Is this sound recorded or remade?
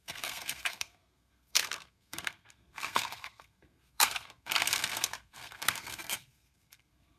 remade